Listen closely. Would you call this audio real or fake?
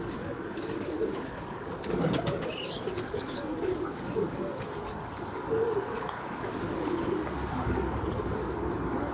fake